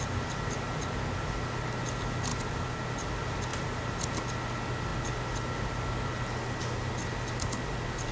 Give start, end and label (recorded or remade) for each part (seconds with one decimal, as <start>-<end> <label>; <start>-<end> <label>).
0.0-2.3 recorded; 2.3-2.8 remade; 2.8-3.5 recorded; 3.5-4.0 remade; 4.0-8.1 recorded